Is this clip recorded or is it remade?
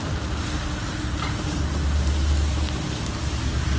recorded